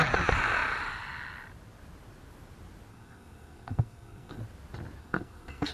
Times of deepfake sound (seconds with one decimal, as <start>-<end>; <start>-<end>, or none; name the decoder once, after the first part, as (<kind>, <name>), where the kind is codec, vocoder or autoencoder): 2.9-4.4 (codec, SNAC); 5.0-5.7